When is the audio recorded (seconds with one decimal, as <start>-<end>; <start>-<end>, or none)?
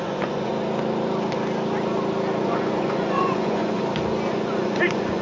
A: 0.5-2.4; 3.8-4.3